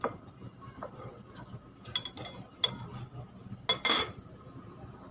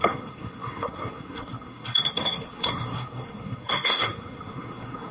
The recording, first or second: first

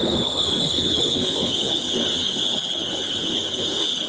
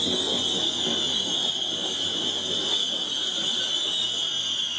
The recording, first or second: second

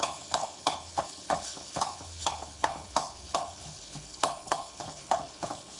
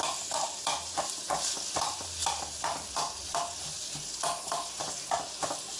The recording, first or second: second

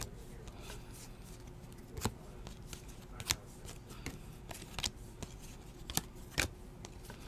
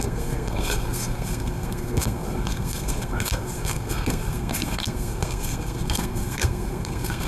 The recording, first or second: first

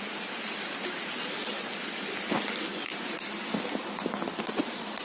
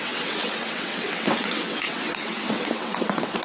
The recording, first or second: first